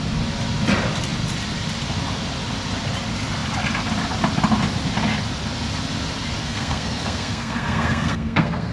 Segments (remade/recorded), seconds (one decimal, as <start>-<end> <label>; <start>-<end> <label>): 0.0-6.4 recorded; 6.4-8.7 remade